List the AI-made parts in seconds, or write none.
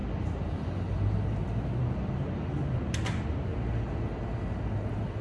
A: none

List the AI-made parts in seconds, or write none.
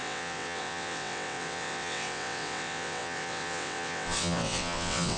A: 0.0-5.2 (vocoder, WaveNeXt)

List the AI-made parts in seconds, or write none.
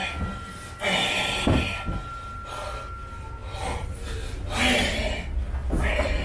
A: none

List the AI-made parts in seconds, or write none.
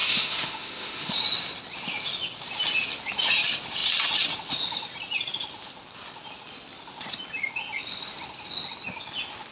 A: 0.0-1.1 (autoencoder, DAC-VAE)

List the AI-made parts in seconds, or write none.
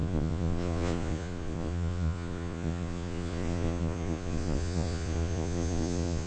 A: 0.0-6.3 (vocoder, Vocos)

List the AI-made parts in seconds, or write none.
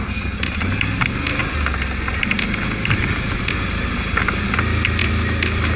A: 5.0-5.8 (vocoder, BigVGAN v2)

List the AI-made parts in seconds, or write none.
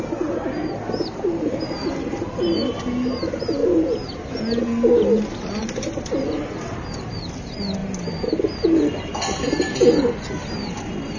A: 5.6-7.1 (vocoder, BigVGAN v2); 7.8-8.4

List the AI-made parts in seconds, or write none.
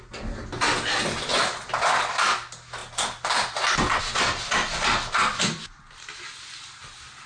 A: none